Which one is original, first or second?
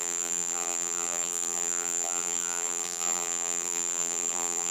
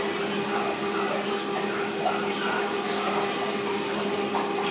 second